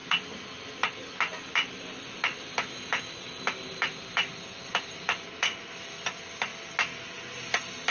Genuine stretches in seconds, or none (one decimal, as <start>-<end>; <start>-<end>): 0.0-7.9